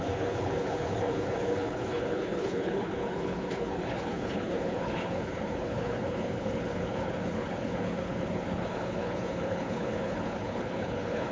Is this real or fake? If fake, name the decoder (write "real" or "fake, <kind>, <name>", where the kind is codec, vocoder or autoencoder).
fake, codec, HILCodec